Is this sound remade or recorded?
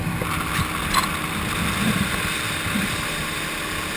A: recorded